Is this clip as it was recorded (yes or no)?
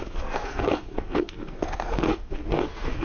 no